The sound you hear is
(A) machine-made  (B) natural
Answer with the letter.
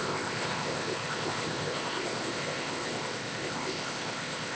A